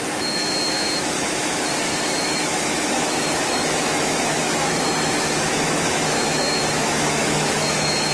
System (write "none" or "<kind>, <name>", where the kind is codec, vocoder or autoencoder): autoencoder, DAC-VAE